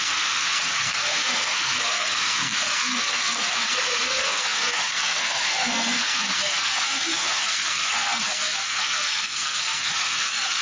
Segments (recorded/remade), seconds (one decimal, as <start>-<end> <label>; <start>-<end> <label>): 0.0-10.6 remade